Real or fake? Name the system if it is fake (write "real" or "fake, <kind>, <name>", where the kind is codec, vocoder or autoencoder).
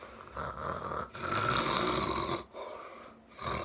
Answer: real